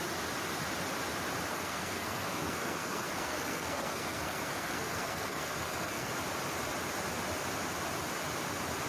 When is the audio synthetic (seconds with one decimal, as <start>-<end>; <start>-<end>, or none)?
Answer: 1.5-6.1